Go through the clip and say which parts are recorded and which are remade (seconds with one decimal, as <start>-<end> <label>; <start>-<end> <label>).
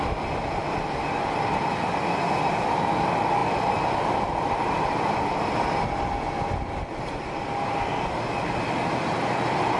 0.0-9.8 recorded